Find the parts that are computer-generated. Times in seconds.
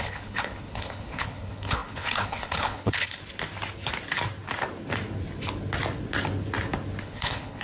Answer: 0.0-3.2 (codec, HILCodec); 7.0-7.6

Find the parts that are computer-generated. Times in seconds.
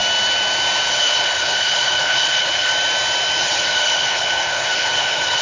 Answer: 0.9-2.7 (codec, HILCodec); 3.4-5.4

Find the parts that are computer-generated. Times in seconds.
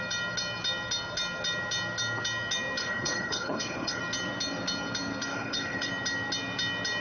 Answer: 2.8-4.0 (codec, HILCodec); 5.3-5.9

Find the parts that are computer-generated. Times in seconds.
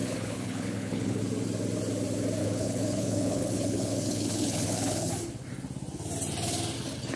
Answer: 0.0-1.2 (codec, HILCodec); 2.4-5.1